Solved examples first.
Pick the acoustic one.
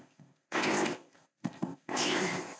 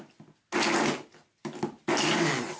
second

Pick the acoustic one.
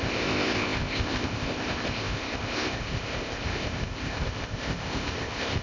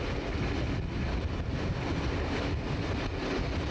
second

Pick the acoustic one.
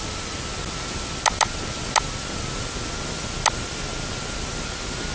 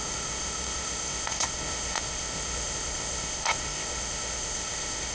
first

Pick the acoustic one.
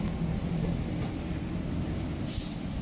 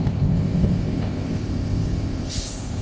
first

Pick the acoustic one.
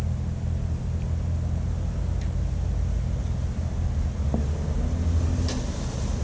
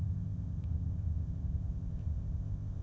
first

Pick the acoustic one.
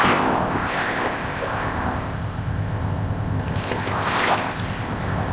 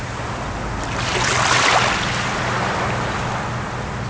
second